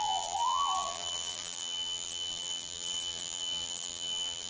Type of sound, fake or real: fake